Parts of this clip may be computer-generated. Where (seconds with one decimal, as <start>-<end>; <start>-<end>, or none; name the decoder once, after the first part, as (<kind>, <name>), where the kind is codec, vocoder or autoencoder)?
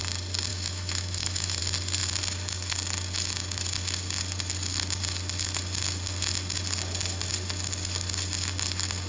0.5-1.6 (autoencoder, DAC-VAE)